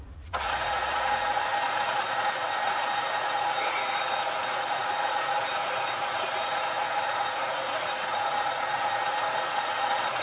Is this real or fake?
fake